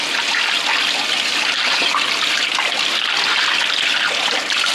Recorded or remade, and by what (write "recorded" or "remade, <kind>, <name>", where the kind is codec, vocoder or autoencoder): recorded